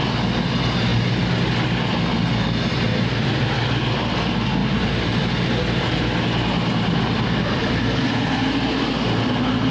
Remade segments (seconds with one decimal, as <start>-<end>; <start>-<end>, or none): none